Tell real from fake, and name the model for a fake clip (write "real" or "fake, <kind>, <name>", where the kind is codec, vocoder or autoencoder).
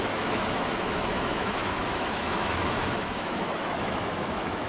fake, autoencoder, DAC-VAE